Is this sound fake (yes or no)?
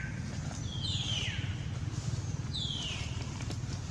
no